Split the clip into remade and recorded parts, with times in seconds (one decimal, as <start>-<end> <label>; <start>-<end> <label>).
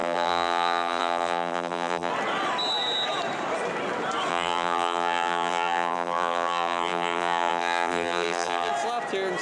0.0-2.1 remade; 2.1-4.3 recorded; 4.3-8.7 remade; 8.7-9.4 recorded